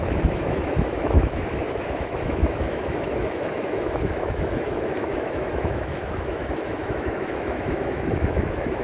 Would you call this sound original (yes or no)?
no